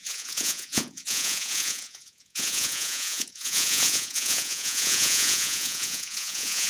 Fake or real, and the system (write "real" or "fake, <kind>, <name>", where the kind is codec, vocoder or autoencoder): fake, vocoder, Vocos